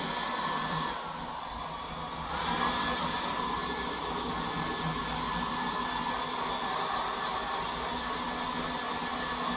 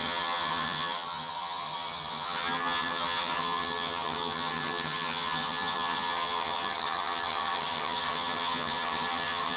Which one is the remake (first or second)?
second